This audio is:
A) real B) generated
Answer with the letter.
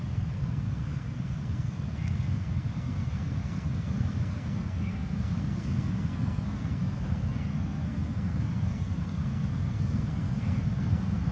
B